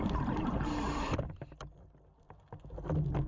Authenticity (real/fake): real